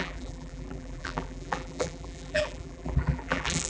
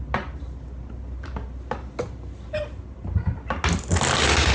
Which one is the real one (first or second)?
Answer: second